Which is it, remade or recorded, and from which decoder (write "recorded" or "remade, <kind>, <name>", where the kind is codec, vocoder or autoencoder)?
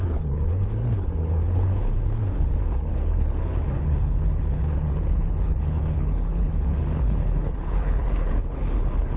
remade, codec, HILCodec